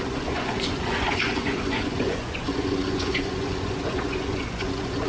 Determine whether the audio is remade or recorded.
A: remade